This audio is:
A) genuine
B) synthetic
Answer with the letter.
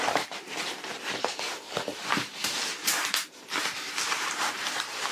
B